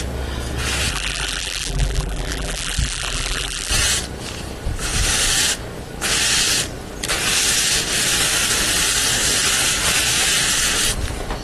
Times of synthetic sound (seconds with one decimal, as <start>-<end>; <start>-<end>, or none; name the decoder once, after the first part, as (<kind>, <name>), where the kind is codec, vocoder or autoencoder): 0.9-3.7 (vocoder, BigVGAN v2)